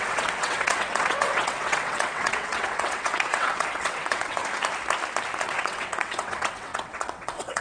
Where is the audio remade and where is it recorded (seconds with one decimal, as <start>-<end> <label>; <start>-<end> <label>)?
0.0-4.4 remade; 4.4-5.4 recorded; 5.4-7.6 remade